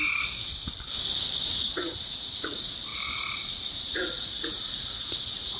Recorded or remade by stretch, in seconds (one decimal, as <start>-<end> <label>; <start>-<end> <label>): 0.0-1.5 recorded; 1.5-5.6 remade

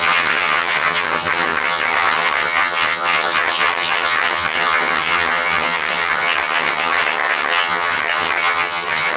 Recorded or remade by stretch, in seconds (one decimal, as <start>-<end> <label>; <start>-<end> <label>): 0.0-9.2 remade

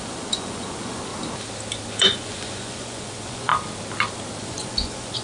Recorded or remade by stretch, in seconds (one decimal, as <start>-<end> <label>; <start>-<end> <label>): 0.0-1.1 remade; 1.1-1.9 recorded; 1.9-3.5 remade; 3.5-4.4 recorded; 4.4-5.2 remade

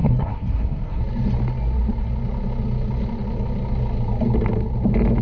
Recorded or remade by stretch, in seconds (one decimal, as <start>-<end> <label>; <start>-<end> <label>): 0.0-1.0 remade; 1.0-5.2 recorded

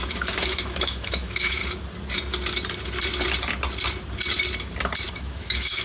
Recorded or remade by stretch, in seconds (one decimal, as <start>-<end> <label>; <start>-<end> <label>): 0.0-1.6 remade; 1.6-5.1 recorded; 5.1-5.8 remade

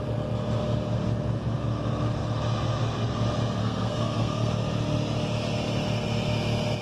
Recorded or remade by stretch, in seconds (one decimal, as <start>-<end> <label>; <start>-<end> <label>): 0.0-3.6 recorded; 3.6-4.5 remade; 4.5-6.8 recorded

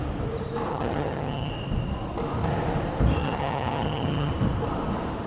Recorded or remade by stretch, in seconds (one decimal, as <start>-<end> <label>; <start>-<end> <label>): 0.0-0.7 recorded; 0.7-1.5 remade; 1.5-3.2 recorded; 3.2-4.3 remade; 4.3-5.3 recorded

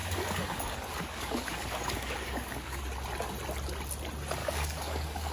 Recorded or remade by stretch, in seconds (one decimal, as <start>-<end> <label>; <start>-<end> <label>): 0.0-2.8 remade; 2.8-4.4 recorded; 4.4-5.3 remade